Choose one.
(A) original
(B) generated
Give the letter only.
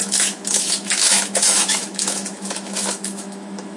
B